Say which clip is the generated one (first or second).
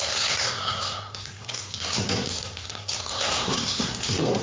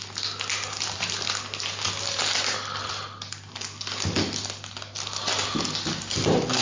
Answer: first